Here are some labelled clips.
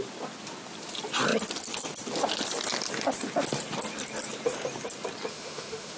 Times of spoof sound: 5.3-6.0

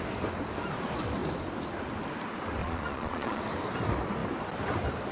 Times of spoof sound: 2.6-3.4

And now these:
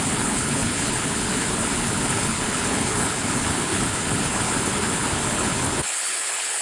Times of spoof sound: 0.0-6.6

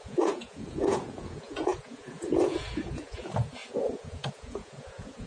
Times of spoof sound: 0.0-5.3

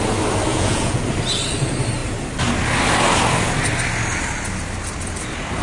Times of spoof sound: 0.5-1.0